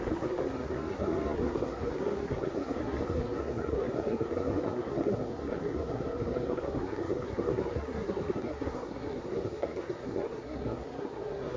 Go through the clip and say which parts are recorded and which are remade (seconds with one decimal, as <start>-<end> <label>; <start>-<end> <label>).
0.0-11.6 remade